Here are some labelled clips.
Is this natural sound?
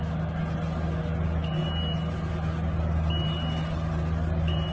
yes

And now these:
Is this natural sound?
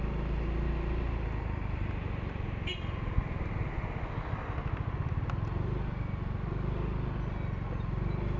yes